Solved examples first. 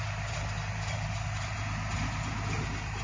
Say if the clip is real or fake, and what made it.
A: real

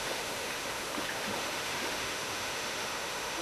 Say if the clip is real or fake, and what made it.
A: fake, autoencoder, DAC-VAE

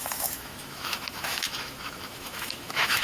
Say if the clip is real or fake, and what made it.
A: fake, autoencoder, DAC-VAE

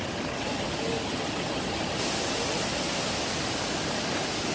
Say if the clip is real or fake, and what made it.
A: real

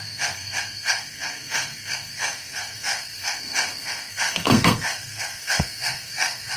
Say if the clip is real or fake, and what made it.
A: fake, codec, SNAC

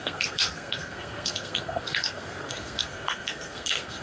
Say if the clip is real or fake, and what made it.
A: fake, codec, SNAC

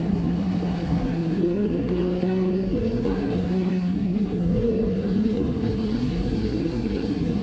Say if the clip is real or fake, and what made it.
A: fake, codec, SNAC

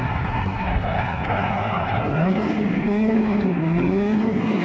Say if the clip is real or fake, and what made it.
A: fake, codec, SNAC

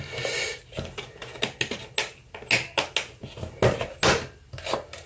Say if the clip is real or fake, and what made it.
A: real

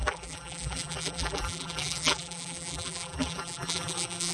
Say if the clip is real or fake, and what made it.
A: fake, vocoder, BigVGAN v2